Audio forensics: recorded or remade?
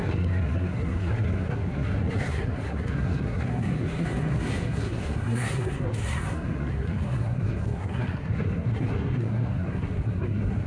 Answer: remade